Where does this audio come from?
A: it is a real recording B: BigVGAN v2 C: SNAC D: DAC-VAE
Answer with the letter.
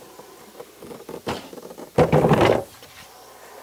A